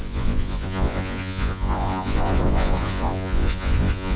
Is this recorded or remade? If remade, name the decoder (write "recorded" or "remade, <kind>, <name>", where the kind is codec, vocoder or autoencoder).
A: remade, vocoder, Vocos